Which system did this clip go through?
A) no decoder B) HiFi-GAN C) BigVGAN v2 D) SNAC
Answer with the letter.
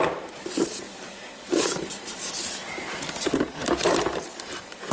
C